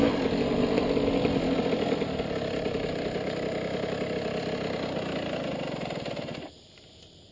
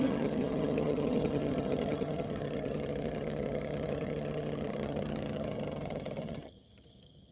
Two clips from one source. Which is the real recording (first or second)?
first